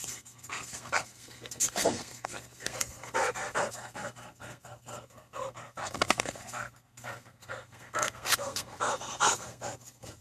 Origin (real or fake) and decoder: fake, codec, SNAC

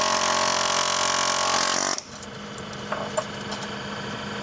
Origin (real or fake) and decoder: real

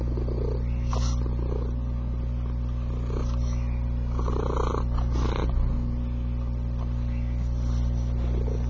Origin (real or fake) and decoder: real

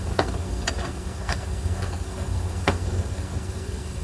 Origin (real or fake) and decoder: fake, codec, SNAC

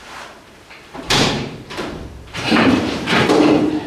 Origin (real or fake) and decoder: fake, vocoder, BigVGAN v2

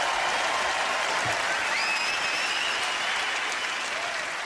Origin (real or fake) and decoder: real